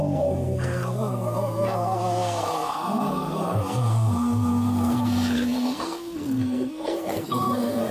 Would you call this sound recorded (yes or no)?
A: no